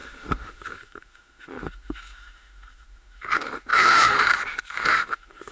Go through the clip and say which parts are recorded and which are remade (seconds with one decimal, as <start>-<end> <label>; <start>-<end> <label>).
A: 0.0-5.5 remade